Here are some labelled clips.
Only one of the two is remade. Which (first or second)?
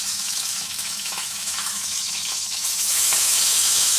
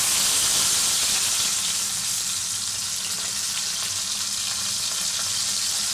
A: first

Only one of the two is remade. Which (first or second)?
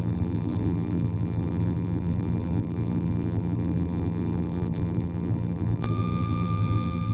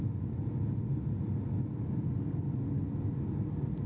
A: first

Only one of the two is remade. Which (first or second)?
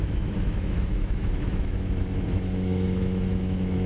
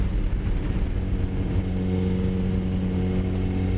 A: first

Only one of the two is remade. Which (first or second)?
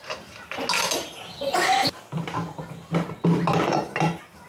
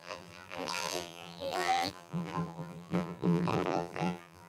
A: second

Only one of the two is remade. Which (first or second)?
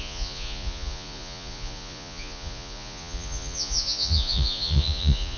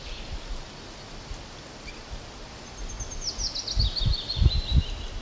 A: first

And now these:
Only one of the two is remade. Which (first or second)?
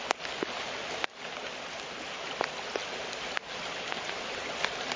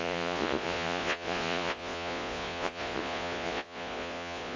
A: second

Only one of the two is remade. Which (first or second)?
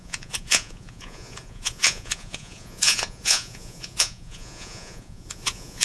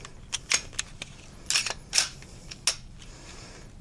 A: first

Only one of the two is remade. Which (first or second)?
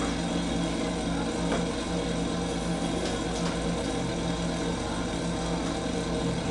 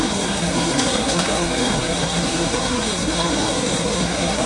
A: second